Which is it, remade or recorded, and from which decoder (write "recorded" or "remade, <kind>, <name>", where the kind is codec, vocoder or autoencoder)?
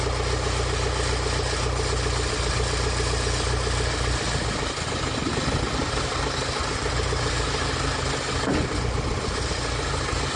recorded